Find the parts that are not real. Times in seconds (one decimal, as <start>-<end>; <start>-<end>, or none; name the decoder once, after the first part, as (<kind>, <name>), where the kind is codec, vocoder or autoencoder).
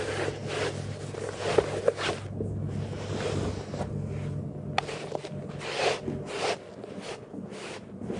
none